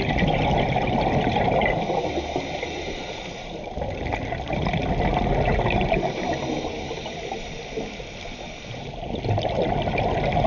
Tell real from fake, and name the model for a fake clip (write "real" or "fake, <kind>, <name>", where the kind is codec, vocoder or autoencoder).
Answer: real